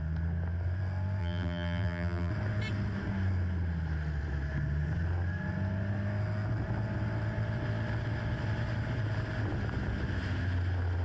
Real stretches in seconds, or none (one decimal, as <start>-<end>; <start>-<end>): 0.0-1.2; 2.3-11.0